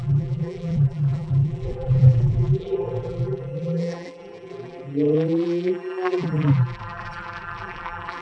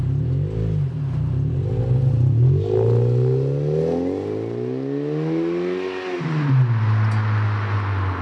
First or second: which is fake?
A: first